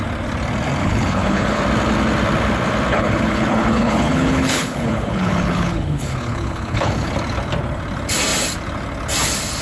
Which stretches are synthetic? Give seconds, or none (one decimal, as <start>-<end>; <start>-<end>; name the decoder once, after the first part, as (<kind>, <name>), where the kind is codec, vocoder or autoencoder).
0.8-1.6 (codec, HILCodec); 2.9-6.9